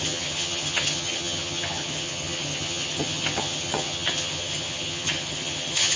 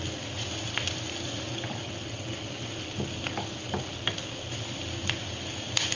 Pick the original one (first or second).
second